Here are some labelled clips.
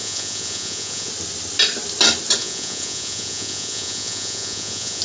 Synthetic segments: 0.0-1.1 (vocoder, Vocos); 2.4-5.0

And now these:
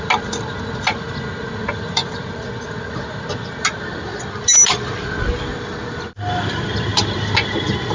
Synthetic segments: none

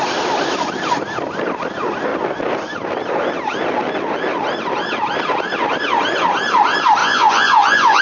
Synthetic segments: 7.0-8.0 (vocoder, Vocos)

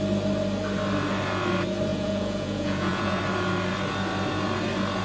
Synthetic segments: 1.9-3.2 (vocoder, Vocos)

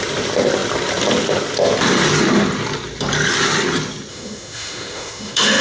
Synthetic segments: 4.1-5.6 (autoencoder, DAC-VAE)

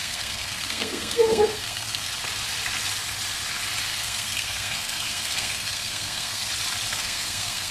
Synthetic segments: 0.0-2.1 (codec, SNAC); 3.9-6.5; 6.9-7.7

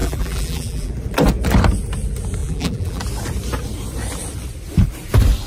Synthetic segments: 0.0-0.9 (vocoder, BigVGAN v2); 2.4-3.0